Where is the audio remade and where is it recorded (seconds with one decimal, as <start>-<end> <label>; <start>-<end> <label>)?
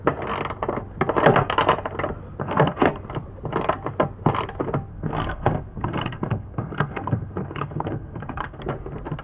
0.0-2.4 recorded; 2.4-2.9 remade; 2.9-4.9 recorded; 4.9-8.6 remade; 8.6-9.2 recorded